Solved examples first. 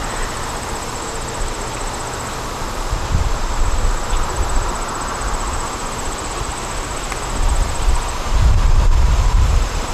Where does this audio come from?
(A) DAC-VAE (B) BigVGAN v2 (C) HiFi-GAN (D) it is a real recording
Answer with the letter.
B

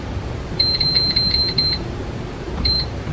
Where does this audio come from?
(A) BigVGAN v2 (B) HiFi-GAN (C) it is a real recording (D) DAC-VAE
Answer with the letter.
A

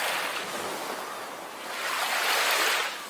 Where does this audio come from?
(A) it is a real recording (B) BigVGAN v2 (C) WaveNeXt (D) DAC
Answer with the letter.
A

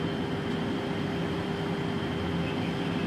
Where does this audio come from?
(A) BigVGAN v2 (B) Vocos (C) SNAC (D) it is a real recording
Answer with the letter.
D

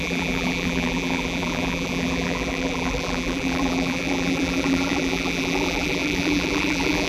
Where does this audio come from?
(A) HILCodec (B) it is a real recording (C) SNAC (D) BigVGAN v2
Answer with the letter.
D